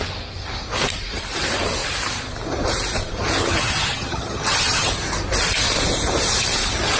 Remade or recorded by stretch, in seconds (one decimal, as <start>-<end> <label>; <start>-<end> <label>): 0.0-3.4 recorded; 3.4-4.9 remade; 4.9-7.0 recorded